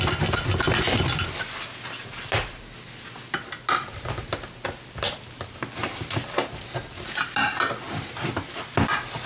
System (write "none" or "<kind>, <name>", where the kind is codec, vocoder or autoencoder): none